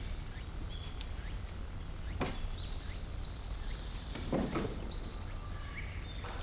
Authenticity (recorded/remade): recorded